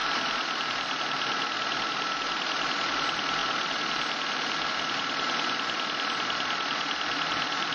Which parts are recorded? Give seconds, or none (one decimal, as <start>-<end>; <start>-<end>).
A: 0.0-2.9